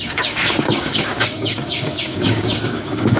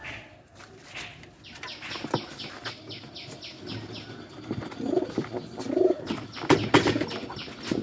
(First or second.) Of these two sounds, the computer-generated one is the first